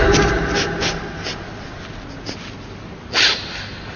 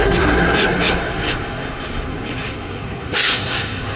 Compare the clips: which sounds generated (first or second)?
second